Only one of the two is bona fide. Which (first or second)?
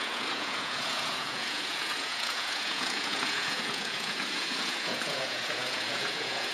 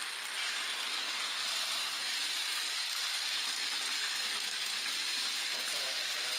second